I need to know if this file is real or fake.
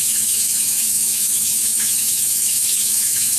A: fake